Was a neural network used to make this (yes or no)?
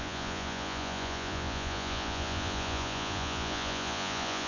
yes